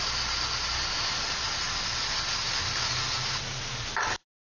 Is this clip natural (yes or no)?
yes